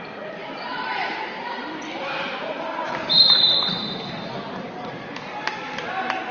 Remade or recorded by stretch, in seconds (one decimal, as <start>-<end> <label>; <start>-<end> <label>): 0.0-0.7 recorded; 0.7-4.5 remade; 4.5-6.3 recorded